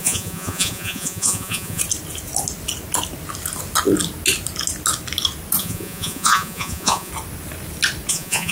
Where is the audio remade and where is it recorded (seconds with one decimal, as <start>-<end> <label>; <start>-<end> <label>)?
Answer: 0.0-1.8 remade; 1.8-5.6 recorded; 5.6-7.1 remade; 7.1-8.1 recorded; 8.1-8.5 remade